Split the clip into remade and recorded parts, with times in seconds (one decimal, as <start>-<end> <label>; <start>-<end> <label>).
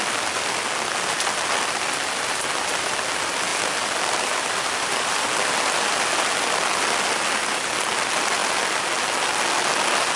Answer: 0.0-10.2 recorded